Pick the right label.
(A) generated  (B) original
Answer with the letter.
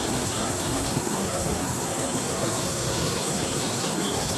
A